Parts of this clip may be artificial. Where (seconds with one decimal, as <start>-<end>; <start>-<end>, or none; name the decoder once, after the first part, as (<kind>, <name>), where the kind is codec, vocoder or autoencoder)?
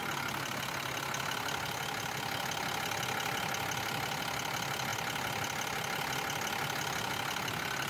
none